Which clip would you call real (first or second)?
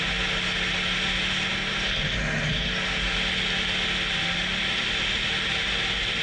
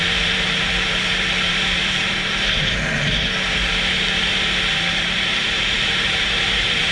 first